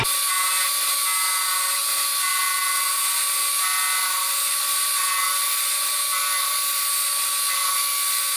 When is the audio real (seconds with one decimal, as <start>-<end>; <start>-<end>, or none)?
0.0-8.4